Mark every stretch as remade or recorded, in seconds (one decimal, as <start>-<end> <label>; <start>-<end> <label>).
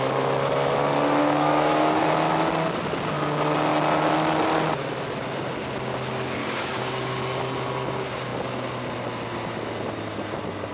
0.0-1.2 recorded; 1.2-2.0 remade; 2.0-6.4 recorded; 6.4-7.2 remade; 7.2-10.7 recorded